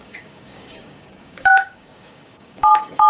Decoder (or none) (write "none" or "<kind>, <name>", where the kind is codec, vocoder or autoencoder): codec, DAC